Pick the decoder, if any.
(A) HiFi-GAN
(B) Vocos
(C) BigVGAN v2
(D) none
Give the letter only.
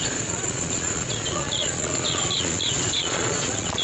B